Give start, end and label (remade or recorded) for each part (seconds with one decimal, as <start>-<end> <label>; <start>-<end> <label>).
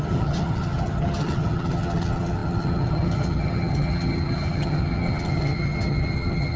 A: 0.0-6.6 remade